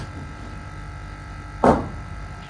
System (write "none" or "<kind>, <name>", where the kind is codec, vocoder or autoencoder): none